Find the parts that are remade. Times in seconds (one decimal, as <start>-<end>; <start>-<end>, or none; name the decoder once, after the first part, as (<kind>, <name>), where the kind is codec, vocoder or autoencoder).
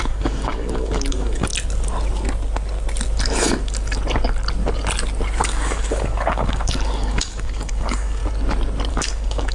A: 0.0-1.5 (codec, DAC); 5.4-8.2; 8.9-9.5